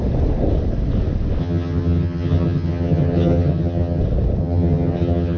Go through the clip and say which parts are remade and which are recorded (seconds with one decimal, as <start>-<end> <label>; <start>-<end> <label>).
0.0-1.4 recorded; 1.4-4.0 remade; 4.0-4.4 recorded; 4.4-5.4 remade